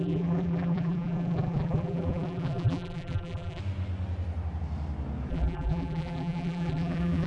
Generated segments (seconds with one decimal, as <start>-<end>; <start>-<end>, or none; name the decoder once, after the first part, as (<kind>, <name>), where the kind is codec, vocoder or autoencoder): 0.0-3.6 (vocoder, BigVGAN v2); 5.3-7.3